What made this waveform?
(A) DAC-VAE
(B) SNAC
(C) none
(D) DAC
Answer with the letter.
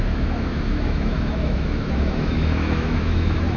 A